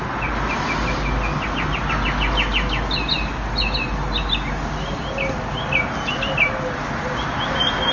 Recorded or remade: recorded